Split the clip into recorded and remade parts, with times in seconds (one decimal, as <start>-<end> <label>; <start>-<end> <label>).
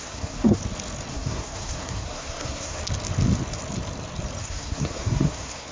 0.0-0.6 remade; 0.6-1.1 recorded; 1.1-2.8 remade; 2.8-4.4 recorded; 4.4-5.7 remade